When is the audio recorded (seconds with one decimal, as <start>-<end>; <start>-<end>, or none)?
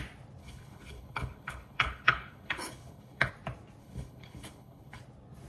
0.0-0.4; 3.3-3.8; 5.0-5.5